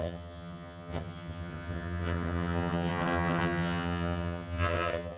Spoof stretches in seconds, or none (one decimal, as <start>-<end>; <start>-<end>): 0.0-5.2

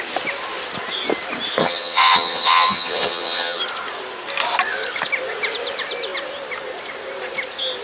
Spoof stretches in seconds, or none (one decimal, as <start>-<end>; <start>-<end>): 1.6-3.6

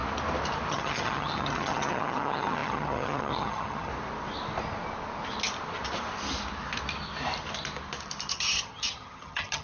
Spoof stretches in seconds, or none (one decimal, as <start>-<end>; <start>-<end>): 0.7-3.9; 8.3-9.6

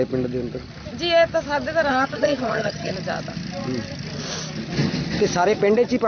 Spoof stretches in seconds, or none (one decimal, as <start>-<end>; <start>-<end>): 1.9-2.9

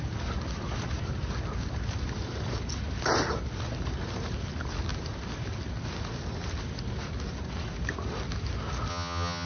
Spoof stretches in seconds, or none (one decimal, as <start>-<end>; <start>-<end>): 8.9-9.5

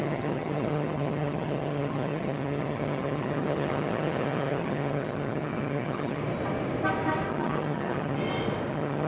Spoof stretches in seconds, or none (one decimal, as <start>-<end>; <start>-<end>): 0.0-6.2; 7.3-8.2; 8.7-9.1

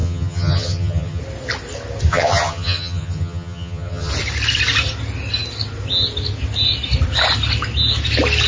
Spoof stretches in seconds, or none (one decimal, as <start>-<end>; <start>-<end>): 0.0-1.2; 2.1-4.1